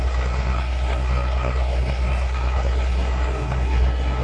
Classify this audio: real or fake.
fake